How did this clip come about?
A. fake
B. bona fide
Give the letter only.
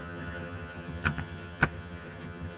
A